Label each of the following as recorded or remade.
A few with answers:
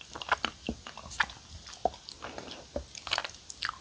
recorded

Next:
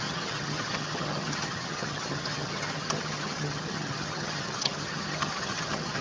remade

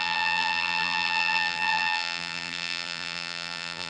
remade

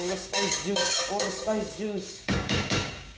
remade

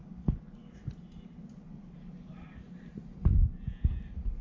recorded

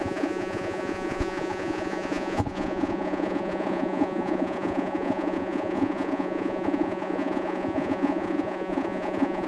remade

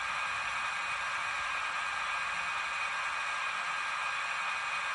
recorded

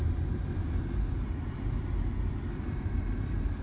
recorded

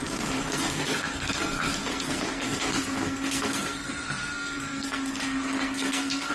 remade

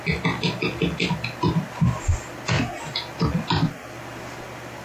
recorded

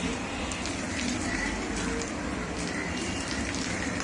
remade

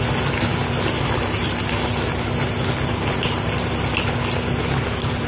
recorded